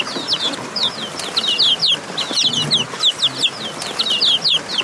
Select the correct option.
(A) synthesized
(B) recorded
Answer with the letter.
B